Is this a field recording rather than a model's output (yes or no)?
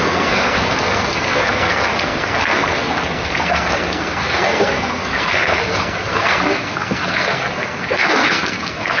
no